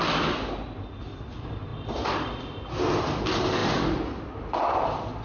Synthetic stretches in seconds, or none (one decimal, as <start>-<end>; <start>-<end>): none

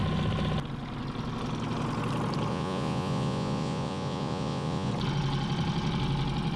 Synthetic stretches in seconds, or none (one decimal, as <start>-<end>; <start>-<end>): 2.5-4.9

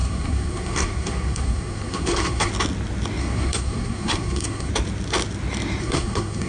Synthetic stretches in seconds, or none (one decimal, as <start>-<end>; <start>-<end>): 0.0-2.5; 3.2-4.7; 5.8-6.5

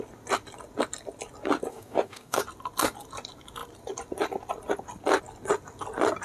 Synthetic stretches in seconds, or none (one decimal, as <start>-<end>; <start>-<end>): 1.7-2.4

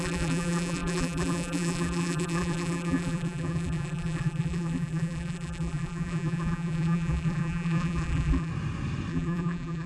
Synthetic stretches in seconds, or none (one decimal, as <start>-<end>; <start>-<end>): 0.0-8.5; 9.1-9.9